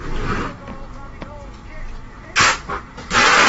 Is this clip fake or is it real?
real